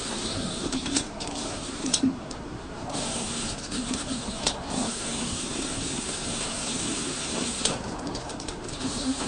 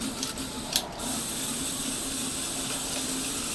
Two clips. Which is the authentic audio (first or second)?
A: second